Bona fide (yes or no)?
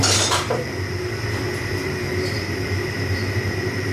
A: no